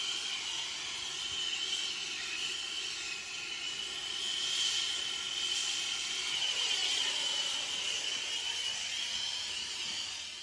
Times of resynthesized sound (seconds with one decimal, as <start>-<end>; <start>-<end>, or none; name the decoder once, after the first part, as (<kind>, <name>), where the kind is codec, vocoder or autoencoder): none